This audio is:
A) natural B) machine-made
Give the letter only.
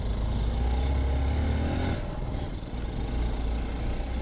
A